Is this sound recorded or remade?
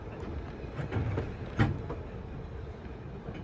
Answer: recorded